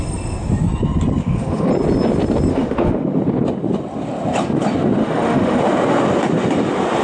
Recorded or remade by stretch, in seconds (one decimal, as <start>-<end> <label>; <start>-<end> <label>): 0.0-1.2 recorded; 1.2-1.7 remade; 1.7-2.5 recorded; 2.5-3.2 remade; 3.2-5.0 recorded; 5.0-5.6 remade; 5.6-7.0 recorded